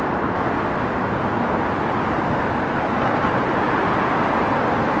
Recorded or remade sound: recorded